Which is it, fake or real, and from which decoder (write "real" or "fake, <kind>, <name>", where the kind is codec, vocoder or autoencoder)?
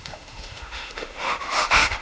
fake, autoencoder, DAC-VAE